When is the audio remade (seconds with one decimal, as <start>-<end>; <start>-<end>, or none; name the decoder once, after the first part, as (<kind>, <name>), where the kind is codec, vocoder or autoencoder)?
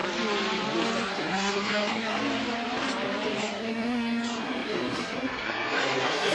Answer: 1.1-2.2 (codec, SNAC); 3.4-6.3